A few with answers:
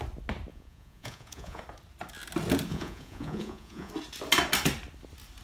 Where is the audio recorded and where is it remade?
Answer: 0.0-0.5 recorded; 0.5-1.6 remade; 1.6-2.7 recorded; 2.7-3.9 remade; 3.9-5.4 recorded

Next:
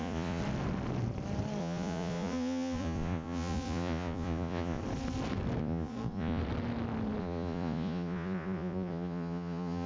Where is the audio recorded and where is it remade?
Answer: 0.0-0.4 remade; 0.4-1.6 recorded; 1.6-4.8 remade; 4.8-5.6 recorded; 5.6-6.4 remade; 6.4-7.2 recorded; 7.2-9.9 remade

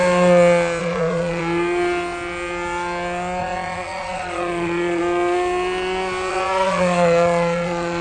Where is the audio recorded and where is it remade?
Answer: 0.0-0.8 recorded; 0.8-1.4 remade; 1.4-3.4 recorded; 3.4-5.0 remade; 5.0-6.3 recorded; 6.3-8.0 remade